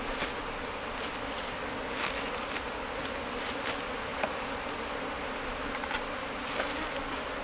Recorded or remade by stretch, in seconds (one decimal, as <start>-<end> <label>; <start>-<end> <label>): 0.0-7.4 recorded